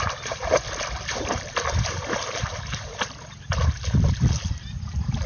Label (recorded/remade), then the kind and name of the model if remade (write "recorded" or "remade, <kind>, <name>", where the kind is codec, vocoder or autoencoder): recorded